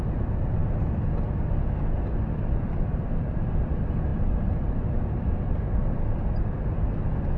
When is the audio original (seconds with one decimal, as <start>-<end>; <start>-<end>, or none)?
0.0-2.9; 3.5-4.1; 5.4-7.4